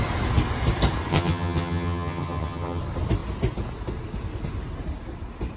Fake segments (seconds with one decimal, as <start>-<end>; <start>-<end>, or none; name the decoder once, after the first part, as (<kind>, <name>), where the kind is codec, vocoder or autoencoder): 1.1-2.8 (vocoder, HiFi-GAN)